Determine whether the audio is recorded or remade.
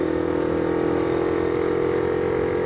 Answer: recorded